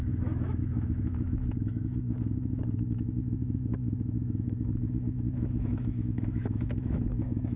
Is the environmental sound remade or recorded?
remade